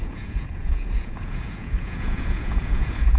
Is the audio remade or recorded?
remade